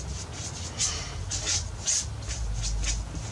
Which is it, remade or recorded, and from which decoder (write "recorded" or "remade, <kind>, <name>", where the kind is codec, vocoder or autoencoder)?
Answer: recorded